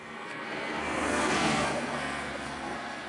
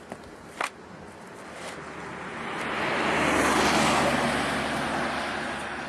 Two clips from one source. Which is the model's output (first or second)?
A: first